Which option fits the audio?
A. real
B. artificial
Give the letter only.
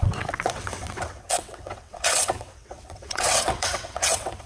B